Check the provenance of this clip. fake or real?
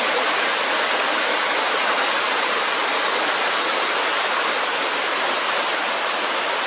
real